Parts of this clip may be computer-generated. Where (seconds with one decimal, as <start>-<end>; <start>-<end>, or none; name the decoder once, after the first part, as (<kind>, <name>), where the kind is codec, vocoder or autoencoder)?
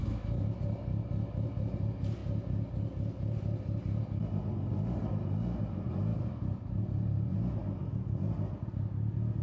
0.0-0.6 (autoencoder, DAC-VAE); 6.1-6.8